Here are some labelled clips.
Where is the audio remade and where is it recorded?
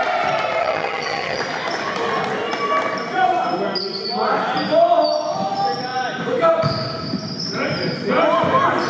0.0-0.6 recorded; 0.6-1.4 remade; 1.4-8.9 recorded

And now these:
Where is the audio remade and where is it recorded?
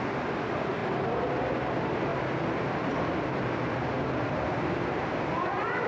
0.0-5.9 recorded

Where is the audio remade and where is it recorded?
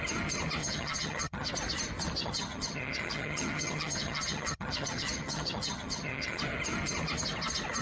0.0-0.6 recorded; 0.6-1.5 remade; 1.5-2.2 recorded; 2.2-6.4 remade; 6.4-7.8 recorded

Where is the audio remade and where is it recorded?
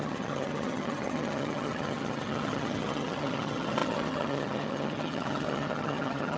0.0-6.4 remade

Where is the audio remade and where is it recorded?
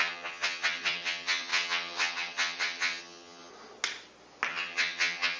0.0-3.5 remade; 3.5-4.5 recorded; 4.5-5.4 remade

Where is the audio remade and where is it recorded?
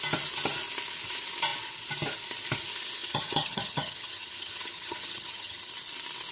0.0-3.0 recorded; 3.0-5.7 remade; 5.7-6.3 recorded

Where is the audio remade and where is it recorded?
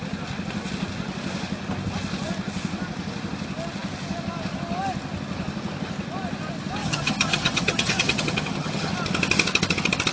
0.0-6.8 recorded; 6.8-8.9 remade; 8.9-10.1 recorded